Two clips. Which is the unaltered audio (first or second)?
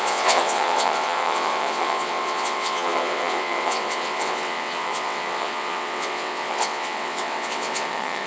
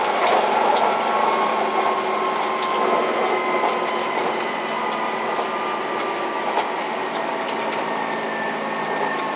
second